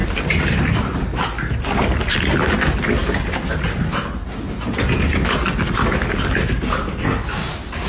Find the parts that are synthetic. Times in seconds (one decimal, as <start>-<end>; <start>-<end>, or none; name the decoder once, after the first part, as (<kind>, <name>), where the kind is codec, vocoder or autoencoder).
none